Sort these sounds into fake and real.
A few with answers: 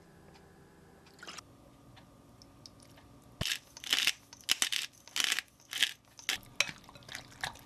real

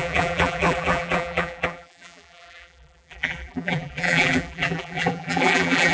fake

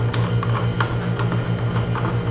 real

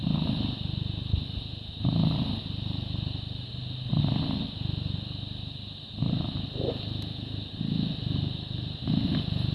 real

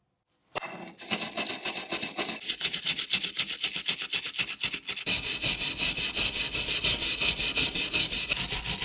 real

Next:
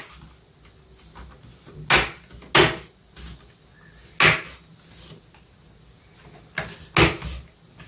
real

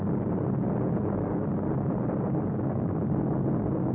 real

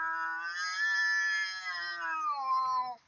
real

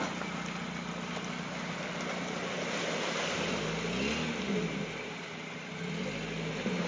real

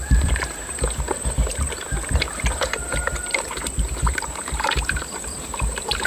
fake